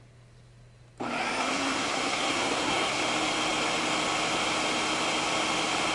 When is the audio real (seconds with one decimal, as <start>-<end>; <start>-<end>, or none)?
0.0-1.4; 3.0-5.9